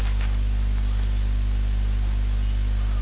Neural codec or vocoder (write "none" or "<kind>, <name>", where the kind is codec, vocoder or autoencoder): none